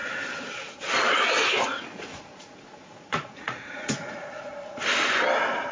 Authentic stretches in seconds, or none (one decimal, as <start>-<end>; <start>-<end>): 0.0-1.7; 4.3-5.7